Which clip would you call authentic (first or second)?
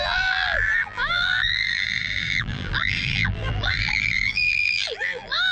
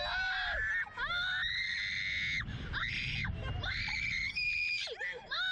second